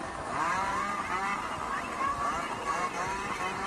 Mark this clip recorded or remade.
remade